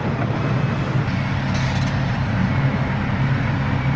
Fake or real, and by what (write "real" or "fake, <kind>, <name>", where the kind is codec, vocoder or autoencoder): real